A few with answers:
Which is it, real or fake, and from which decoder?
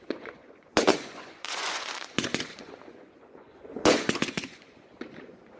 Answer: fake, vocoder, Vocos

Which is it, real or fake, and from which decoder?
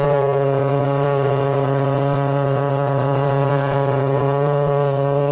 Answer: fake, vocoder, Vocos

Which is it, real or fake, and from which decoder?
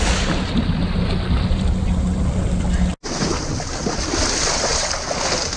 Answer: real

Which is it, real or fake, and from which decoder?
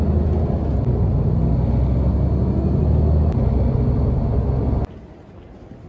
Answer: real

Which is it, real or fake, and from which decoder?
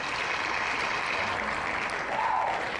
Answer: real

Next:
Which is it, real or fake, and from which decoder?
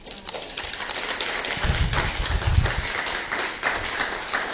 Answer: real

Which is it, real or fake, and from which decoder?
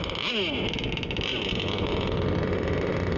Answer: real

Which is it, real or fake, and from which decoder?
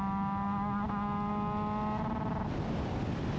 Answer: real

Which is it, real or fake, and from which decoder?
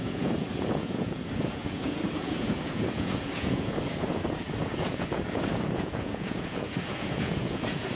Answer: fake, vocoder, Vocos